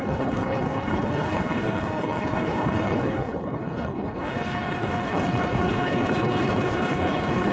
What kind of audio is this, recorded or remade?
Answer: remade